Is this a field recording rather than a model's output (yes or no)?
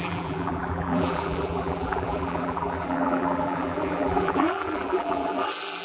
no